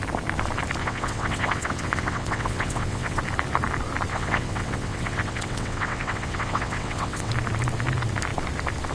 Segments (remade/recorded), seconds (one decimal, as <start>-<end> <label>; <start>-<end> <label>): 0.0-0.8 recorded; 0.8-3.2 remade; 3.2-4.1 recorded; 4.1-7.3 remade; 7.3-8.9 recorded